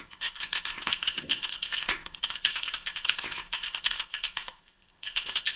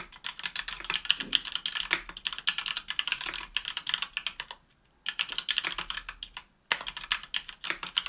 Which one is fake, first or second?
first